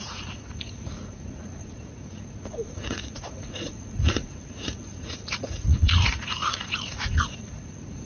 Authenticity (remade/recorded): remade